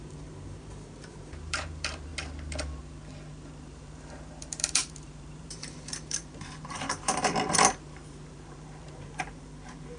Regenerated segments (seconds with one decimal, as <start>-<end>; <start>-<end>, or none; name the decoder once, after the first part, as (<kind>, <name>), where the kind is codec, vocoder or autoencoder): 0.0-2.1 (vocoder, BigVGAN v2); 3.6-10.0